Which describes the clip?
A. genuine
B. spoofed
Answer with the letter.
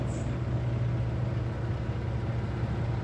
A